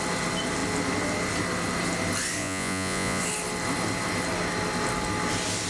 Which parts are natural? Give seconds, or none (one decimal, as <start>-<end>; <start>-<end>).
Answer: 0.0-2.4; 3.2-5.7